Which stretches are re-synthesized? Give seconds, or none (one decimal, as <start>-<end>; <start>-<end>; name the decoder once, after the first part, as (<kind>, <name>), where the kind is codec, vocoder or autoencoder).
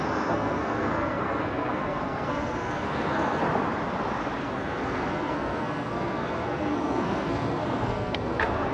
0.0-3.4 (codec, SNAC); 4.4-8.7